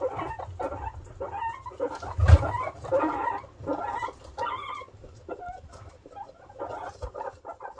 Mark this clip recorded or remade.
recorded